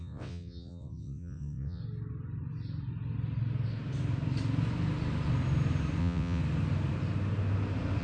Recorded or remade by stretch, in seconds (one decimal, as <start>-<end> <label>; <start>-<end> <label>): 0.0-1.8 remade; 1.8-6.0 recorded; 6.0-6.4 remade; 6.4-8.0 recorded